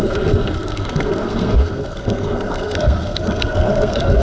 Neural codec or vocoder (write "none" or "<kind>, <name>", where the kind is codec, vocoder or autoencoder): codec, SNAC